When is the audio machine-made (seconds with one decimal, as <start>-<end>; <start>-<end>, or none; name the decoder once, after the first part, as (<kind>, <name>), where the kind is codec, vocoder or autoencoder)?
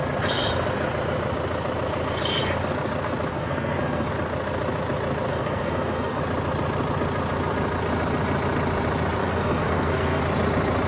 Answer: 3.3-4.1 (codec, SNAC); 5.3-6.2; 9.2-10.2